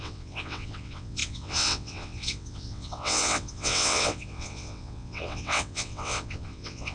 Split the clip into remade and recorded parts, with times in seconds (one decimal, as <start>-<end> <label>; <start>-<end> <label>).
0.0-6.9 remade